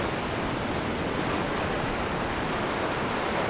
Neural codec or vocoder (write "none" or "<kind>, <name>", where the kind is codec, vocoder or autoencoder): none